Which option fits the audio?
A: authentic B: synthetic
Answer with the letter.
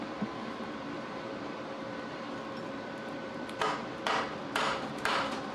B